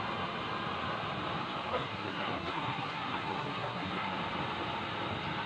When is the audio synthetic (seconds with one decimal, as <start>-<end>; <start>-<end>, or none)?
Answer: 1.7-4.2